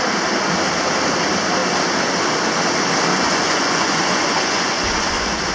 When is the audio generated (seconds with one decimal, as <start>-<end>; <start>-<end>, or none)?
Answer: 3.1-5.5